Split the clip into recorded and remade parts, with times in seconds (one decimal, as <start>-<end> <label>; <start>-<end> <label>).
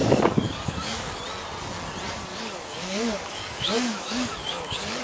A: 0.0-1.2 remade; 1.2-2.3 recorded; 2.3-5.0 remade